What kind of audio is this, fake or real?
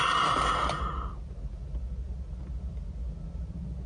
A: real